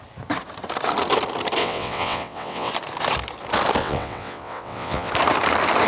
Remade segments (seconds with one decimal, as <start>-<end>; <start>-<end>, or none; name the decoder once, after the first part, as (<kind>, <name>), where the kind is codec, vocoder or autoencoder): 1.6-2.7 (vocoder, WaveNeXt); 3.8-5.1